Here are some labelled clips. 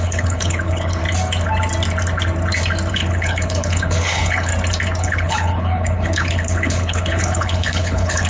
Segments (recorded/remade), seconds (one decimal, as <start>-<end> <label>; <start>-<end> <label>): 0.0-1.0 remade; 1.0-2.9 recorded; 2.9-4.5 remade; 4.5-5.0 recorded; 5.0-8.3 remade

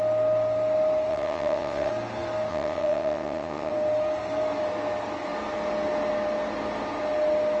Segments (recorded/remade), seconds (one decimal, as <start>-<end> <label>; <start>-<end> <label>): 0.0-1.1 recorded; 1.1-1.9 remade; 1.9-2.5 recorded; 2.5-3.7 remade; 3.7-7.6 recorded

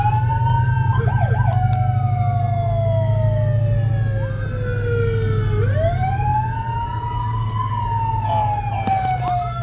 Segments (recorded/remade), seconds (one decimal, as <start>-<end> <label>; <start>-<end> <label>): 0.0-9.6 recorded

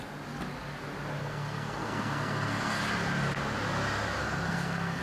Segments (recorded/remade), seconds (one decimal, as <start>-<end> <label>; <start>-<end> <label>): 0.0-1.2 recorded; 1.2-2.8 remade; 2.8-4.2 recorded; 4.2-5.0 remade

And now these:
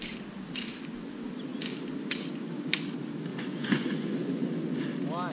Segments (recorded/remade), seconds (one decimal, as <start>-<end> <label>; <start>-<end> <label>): 0.0-3.3 recorded; 3.3-4.8 remade; 4.8-5.3 recorded

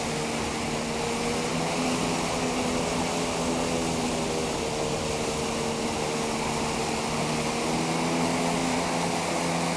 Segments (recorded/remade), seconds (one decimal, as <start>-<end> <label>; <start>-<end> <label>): 0.0-9.8 recorded